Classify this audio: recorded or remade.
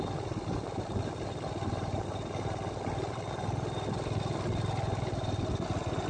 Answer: recorded